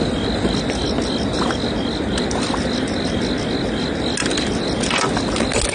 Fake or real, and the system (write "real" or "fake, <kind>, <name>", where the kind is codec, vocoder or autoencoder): real